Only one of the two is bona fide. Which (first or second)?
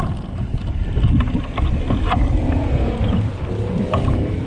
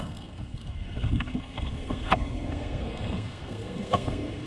first